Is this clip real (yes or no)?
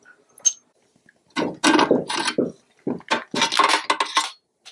yes